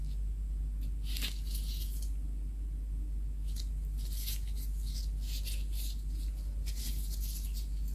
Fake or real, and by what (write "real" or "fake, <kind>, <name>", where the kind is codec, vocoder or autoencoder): real